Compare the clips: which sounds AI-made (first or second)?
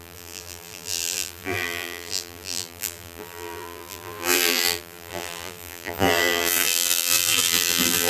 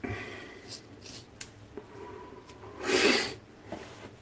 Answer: first